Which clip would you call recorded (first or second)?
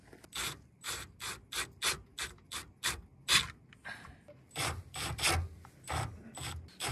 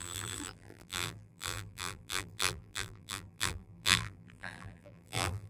first